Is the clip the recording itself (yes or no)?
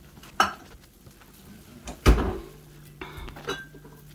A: yes